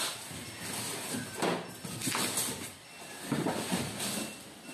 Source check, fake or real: real